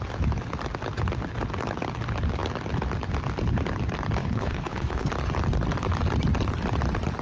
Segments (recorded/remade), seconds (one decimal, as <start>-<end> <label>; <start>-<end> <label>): 0.0-4.2 recorded; 4.2-5.1 remade; 5.1-7.2 recorded